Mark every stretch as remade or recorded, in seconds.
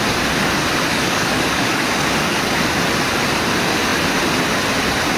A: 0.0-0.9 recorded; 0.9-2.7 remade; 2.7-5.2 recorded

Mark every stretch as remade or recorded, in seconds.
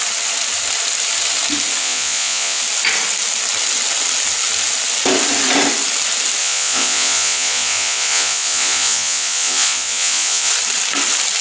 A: 0.0-1.8 recorded; 1.8-2.6 remade; 2.6-6.4 recorded; 6.4-10.5 remade; 10.5-11.4 recorded